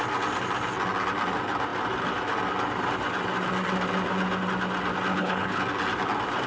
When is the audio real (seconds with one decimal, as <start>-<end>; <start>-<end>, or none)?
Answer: 0.0-5.1; 5.6-6.5